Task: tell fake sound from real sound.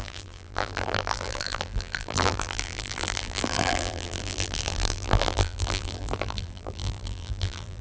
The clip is fake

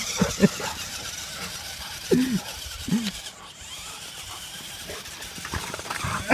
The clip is fake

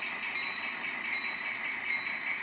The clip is real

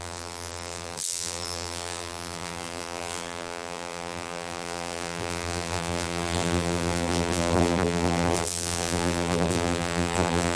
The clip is fake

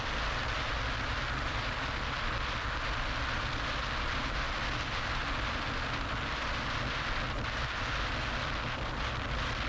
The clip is real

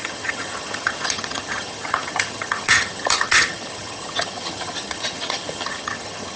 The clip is fake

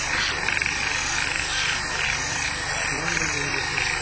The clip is real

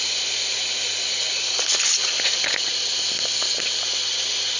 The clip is real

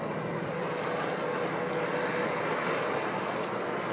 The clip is real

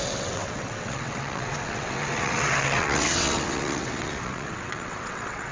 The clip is fake